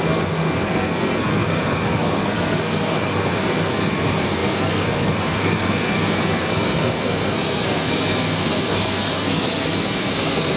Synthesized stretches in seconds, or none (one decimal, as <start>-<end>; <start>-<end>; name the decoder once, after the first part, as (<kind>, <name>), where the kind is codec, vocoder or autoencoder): 0.0-10.6 (codec, SNAC)